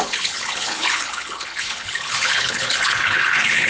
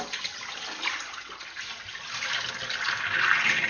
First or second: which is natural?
second